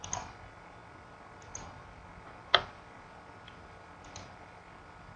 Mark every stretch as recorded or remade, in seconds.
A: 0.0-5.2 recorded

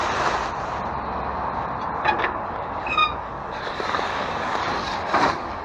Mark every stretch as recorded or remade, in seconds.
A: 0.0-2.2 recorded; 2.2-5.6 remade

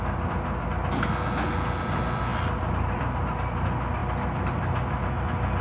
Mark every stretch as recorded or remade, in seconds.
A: 0.0-5.6 recorded

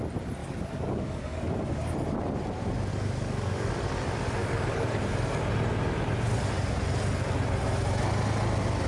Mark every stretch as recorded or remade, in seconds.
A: 0.0-0.4 recorded; 0.4-1.9 remade; 1.9-2.9 recorded; 2.9-3.7 remade; 3.7-4.4 recorded; 4.4-5.0 remade; 5.0-8.9 recorded